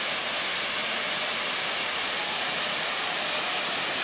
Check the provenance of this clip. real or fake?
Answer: real